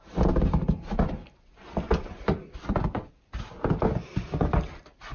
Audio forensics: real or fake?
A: real